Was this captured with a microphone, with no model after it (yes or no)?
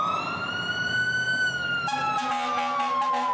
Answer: yes